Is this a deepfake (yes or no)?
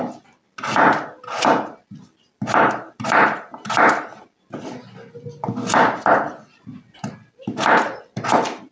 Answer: no